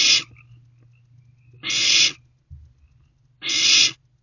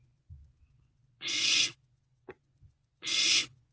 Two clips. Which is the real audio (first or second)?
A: first